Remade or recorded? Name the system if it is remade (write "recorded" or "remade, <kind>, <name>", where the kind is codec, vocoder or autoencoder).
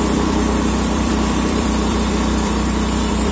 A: remade, vocoder, BigVGAN v2